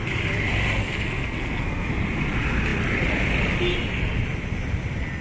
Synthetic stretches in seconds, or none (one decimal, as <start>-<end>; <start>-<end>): 0.8-1.9

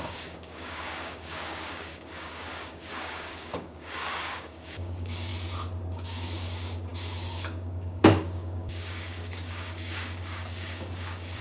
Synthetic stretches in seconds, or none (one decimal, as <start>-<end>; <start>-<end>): 0.0-5.3; 5.9-11.4